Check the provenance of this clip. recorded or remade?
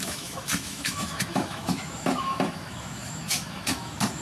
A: remade